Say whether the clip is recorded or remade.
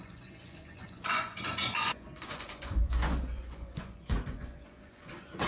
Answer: remade